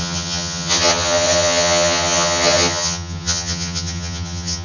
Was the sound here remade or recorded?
remade